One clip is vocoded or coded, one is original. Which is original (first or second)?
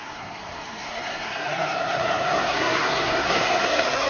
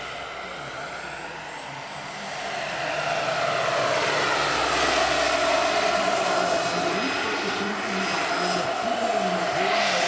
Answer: second